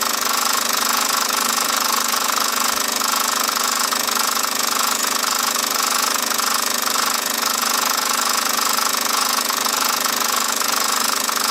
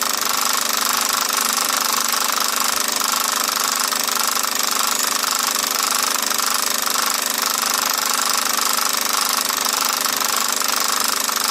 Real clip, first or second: second